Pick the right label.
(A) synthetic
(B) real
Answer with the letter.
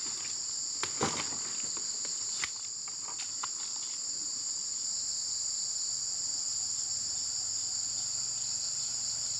B